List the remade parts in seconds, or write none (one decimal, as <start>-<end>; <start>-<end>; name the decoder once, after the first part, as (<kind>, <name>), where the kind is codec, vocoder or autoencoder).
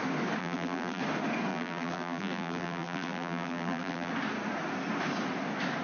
0.4-1.0 (vocoder, BigVGAN v2); 1.5-4.1